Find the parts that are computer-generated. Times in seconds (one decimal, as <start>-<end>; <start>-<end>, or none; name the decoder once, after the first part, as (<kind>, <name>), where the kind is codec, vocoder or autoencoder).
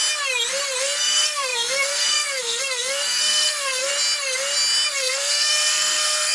0.8-3.9 (codec, SNAC); 4.9-6.3